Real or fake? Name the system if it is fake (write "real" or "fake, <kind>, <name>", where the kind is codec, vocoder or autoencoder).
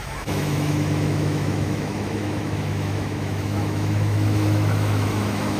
fake, autoencoder, DAC-VAE